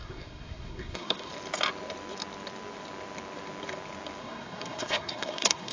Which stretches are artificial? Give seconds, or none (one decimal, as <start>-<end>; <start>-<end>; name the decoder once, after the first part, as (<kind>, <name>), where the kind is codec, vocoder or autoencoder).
0.0-1.3 (codec, SNAC); 4.2-5.7